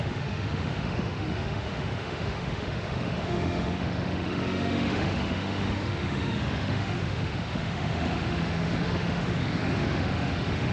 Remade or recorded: remade